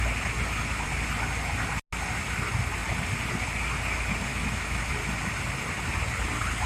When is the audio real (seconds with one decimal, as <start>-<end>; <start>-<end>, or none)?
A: 0.0-4.3; 5.0-6.7